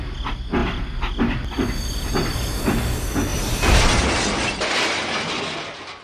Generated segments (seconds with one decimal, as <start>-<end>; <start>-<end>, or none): none